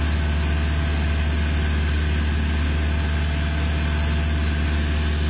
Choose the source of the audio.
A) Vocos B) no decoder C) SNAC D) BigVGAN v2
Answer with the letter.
B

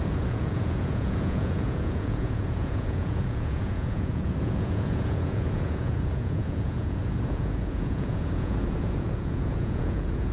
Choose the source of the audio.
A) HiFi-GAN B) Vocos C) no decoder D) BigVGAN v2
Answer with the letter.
B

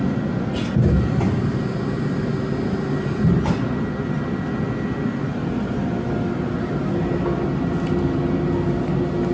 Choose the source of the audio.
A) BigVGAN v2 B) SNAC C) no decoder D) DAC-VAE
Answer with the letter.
C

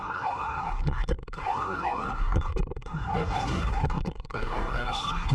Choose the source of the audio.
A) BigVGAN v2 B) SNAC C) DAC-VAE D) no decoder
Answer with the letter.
B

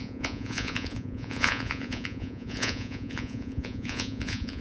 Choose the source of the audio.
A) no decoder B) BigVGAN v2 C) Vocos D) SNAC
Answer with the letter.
C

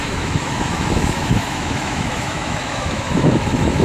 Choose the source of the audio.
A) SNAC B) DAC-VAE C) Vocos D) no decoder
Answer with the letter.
B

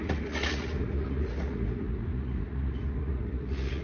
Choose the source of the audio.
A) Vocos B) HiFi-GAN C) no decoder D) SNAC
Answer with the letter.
A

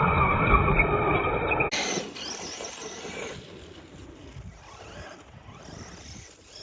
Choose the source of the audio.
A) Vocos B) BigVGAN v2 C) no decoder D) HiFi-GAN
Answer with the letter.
C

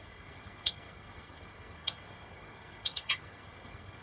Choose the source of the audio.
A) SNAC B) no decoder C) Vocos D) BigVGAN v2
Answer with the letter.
A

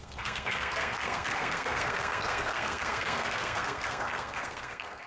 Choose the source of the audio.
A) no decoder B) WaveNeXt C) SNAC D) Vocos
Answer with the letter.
C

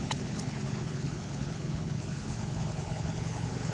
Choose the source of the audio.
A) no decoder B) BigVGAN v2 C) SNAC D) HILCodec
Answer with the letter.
D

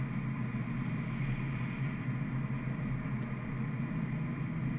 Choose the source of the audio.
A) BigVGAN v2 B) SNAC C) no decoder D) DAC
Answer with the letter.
C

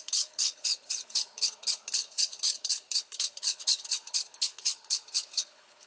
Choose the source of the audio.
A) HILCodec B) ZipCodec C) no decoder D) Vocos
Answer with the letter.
A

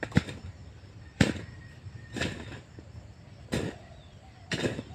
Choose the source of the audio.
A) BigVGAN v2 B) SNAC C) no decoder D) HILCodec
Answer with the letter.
A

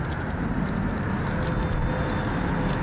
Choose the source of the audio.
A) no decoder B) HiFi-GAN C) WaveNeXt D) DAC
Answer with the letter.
A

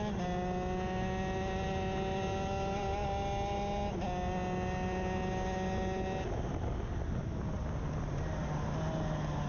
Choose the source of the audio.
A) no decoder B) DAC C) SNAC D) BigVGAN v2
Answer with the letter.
A